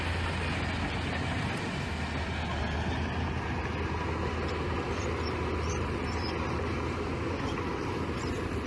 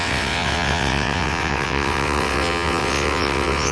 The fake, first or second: second